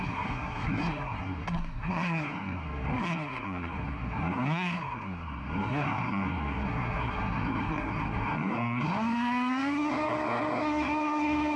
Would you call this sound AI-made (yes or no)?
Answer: yes